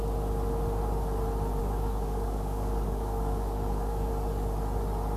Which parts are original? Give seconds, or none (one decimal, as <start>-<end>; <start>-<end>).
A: 0.0-1.6; 4.1-5.2